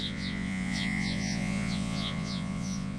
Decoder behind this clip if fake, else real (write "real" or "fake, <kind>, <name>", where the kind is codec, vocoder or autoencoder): fake, vocoder, Vocos